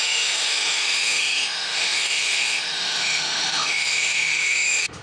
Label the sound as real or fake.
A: fake